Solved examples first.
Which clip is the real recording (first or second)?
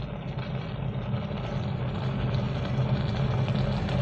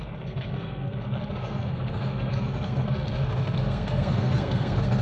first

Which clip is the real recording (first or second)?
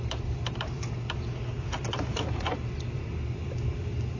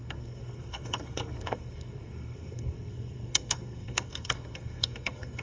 first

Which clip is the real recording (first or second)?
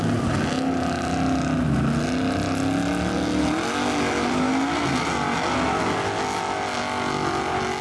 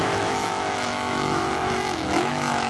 first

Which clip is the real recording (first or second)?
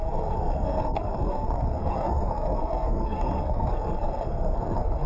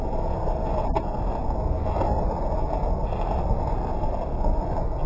second